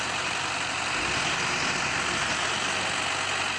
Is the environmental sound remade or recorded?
recorded